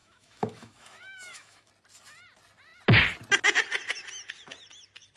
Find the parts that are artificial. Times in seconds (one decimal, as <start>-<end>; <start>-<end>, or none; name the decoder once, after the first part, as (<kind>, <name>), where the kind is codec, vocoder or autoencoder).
0.0-1.7 (autoencoder, DAC-VAE)